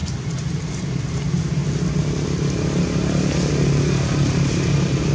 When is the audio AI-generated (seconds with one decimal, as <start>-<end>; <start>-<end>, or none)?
1.1-1.6; 3.5-5.1

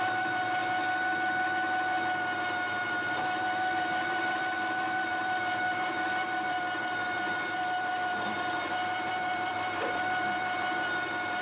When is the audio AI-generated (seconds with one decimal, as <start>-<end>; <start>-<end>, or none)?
0.0-0.6; 3.7-11.4

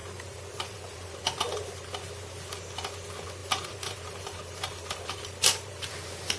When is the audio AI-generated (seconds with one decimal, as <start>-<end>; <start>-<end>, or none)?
0.0-1.2; 3.4-5.9

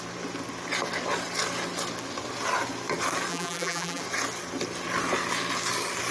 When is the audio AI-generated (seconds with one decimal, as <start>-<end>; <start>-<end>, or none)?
3.3-4.0